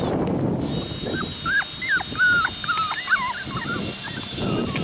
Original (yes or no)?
yes